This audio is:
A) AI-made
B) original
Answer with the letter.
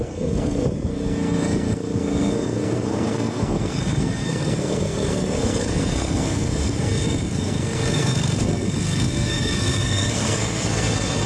A